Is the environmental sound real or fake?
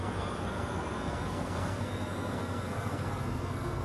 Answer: fake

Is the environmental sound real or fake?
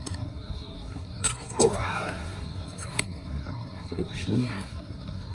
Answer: fake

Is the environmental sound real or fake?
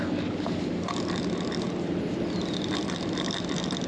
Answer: real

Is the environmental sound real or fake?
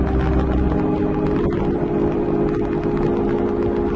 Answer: real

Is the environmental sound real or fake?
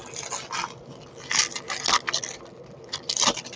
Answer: real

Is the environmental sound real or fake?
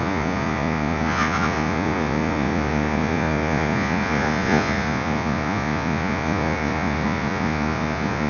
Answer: fake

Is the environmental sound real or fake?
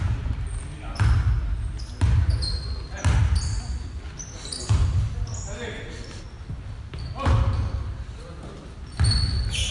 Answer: real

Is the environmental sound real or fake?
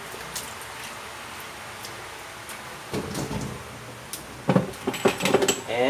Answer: real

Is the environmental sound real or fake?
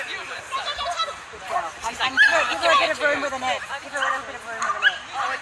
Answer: real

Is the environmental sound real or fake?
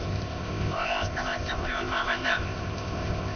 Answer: fake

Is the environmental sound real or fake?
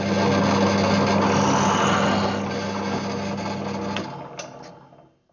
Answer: real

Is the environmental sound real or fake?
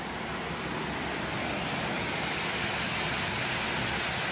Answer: real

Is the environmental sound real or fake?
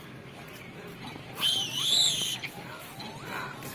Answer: real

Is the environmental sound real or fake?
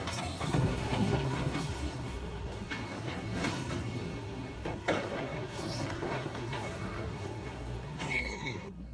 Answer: fake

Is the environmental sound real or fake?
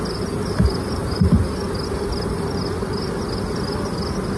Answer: real